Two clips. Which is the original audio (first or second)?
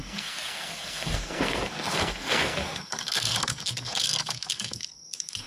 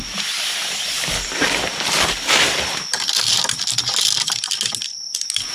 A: second